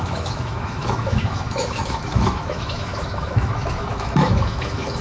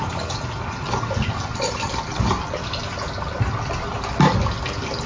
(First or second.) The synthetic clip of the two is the first